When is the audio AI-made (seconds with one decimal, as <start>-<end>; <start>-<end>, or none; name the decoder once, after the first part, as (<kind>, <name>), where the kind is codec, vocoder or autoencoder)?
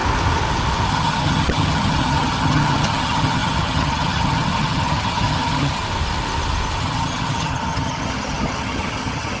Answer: 0.9-5.8 (vocoder, HiFi-GAN); 6.8-9.4